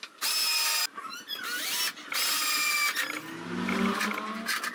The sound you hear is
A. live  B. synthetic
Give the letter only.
A